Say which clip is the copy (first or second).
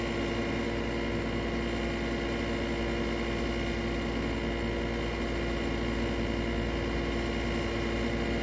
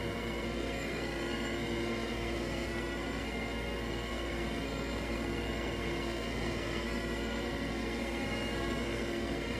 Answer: second